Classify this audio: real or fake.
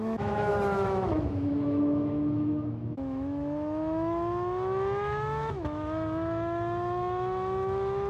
fake